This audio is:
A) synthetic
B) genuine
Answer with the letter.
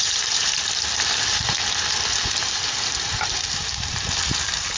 A